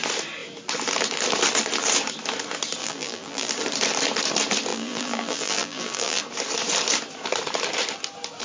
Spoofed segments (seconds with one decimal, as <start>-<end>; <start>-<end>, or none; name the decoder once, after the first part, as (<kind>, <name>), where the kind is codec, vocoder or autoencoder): 2.8-3.5 (vocoder, BigVGAN v2); 4.7-6.2